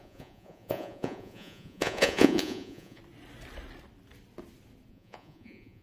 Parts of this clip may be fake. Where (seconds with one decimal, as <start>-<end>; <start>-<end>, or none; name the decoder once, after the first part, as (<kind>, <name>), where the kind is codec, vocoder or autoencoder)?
0.0-3.0 (vocoder, Vocos); 4.9-5.8

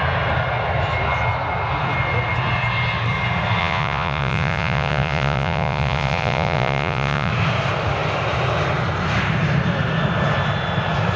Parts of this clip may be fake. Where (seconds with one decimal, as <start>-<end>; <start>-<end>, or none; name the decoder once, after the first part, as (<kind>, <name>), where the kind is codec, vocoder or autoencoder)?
3.6-7.3 (vocoder, Vocos)

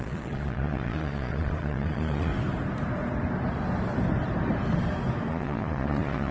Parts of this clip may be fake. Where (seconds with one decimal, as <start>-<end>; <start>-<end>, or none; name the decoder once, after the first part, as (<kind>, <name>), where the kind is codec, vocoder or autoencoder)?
0.0-2.3 (vocoder, Vocos); 5.3-6.3